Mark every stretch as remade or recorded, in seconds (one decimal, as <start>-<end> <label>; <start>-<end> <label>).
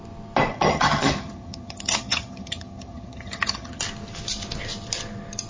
0.0-0.5 recorded; 0.5-3.8 remade; 3.8-5.5 recorded